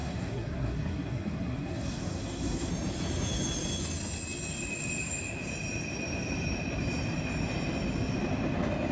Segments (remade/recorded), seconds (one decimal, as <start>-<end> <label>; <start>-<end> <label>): 0.0-2.7 remade; 2.7-8.9 recorded